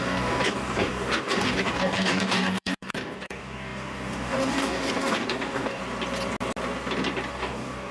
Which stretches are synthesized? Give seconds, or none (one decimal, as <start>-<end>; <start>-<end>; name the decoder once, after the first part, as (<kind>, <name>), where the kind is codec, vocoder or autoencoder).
0.0-5.8 (codec, DAC); 7.3-7.9